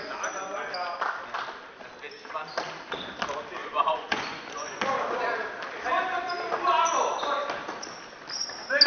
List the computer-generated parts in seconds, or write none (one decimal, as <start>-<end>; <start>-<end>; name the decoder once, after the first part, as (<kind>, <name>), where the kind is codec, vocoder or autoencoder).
3.6-4.8 (vocoder, Vocos)